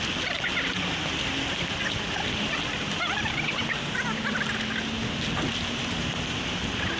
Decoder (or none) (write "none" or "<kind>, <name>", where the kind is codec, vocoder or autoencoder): none